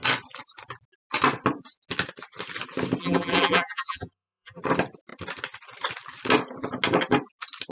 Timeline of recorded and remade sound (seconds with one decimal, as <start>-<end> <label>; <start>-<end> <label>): 0.0-3.0 recorded; 3.0-4.6 remade; 4.6-7.7 recorded

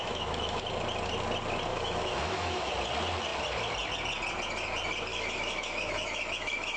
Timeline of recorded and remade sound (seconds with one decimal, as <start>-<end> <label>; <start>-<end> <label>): 0.0-0.6 remade; 0.6-1.7 recorded; 1.7-2.7 remade; 2.7-5.1 recorded; 5.1-6.8 remade

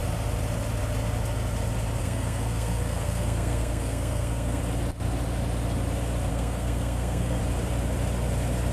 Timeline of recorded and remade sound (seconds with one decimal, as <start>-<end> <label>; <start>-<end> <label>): 0.0-2.0 recorded; 2.0-4.6 remade; 4.6-6.3 recorded; 6.3-7.4 remade; 7.4-8.7 recorded

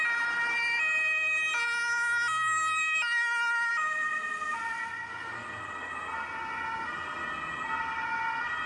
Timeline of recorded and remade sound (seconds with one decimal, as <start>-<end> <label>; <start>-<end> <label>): 0.0-8.7 recorded

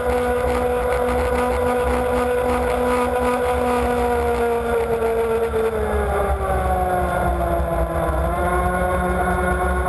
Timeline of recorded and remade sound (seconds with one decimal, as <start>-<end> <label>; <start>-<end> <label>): 0.0-9.9 recorded

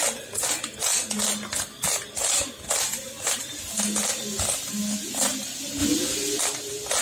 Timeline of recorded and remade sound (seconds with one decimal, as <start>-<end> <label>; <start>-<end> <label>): 0.0-7.0 recorded

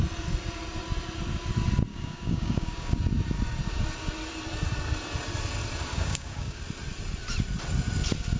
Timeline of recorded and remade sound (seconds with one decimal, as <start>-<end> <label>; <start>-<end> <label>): 0.0-1.9 recorded; 1.9-3.0 remade; 3.0-5.9 recorded; 5.9-6.6 remade; 6.6-8.4 recorded

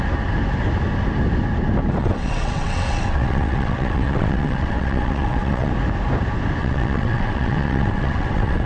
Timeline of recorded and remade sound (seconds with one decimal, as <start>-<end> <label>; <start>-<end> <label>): 0.0-2.0 recorded; 2.0-5.7 remade; 5.7-6.6 recorded; 6.6-8.7 remade